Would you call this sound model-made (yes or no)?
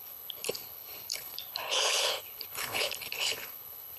yes